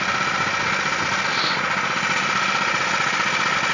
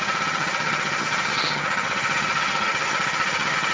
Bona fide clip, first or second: first